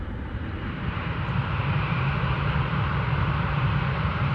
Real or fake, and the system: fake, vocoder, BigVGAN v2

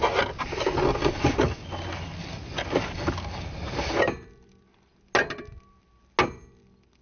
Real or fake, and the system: real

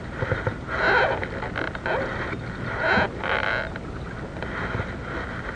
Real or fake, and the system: real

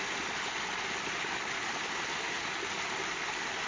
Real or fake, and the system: real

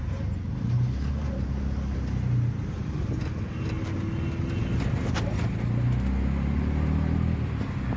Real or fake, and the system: real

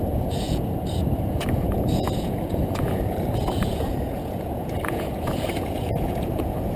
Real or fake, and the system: fake, vocoder, Vocos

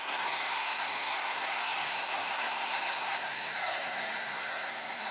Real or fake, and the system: fake, codec, SNAC